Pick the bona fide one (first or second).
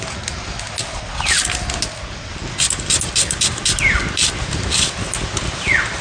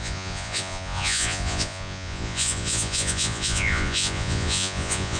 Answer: first